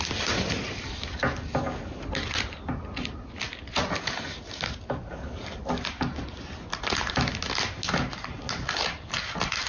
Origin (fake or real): real